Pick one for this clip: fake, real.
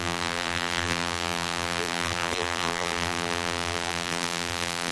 fake